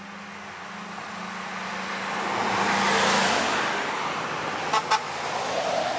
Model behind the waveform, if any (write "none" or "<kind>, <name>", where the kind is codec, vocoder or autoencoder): none